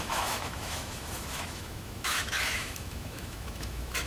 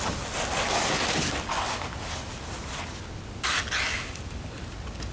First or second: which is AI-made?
first